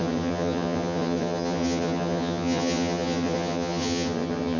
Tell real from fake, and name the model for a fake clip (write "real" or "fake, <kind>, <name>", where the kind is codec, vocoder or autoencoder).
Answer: fake, vocoder, HiFi-GAN